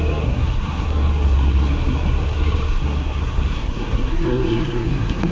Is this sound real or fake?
fake